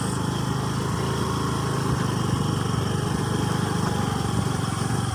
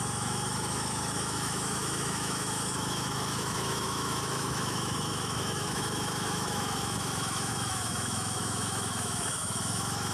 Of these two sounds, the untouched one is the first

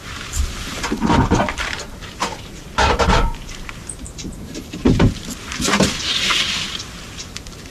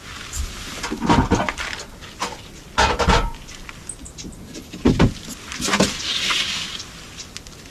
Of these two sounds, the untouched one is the second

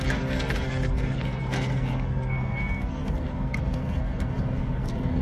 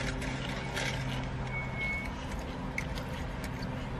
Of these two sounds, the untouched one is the second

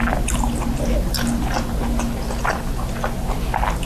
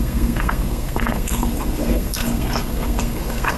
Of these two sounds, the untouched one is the first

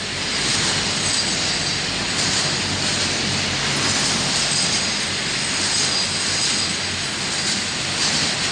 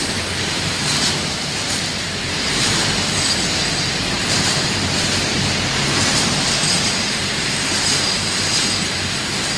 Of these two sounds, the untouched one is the first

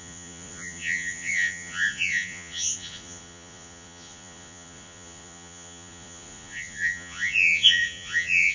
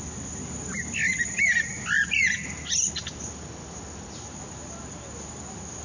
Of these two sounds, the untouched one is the second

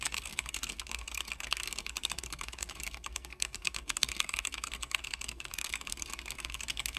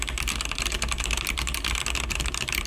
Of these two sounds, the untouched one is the second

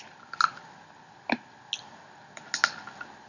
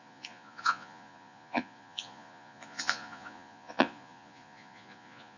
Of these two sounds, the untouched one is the first